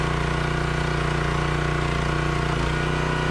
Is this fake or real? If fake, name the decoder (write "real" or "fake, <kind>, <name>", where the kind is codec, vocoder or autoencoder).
real